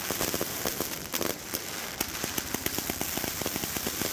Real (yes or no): yes